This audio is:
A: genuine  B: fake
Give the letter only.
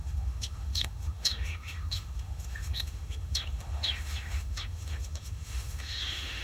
B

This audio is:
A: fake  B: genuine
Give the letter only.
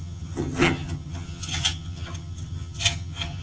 A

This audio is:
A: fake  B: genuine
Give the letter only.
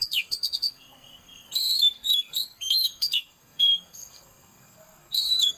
A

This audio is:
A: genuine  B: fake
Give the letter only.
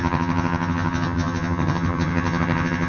B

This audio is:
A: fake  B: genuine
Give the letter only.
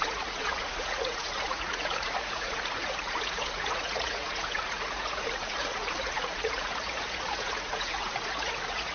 A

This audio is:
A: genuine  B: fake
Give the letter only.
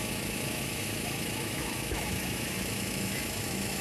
B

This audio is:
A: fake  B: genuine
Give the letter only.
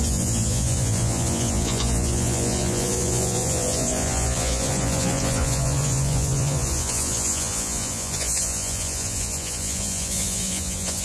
A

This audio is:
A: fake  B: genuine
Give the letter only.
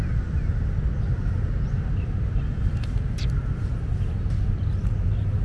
B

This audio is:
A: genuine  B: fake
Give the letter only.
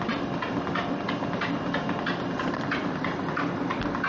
A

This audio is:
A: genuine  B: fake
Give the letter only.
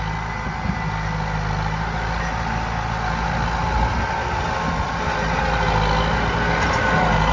A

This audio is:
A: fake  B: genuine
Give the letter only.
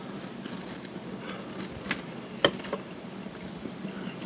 B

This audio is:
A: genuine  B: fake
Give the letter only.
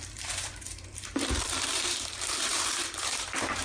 B